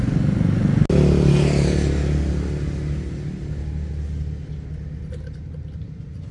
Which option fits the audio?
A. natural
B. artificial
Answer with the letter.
A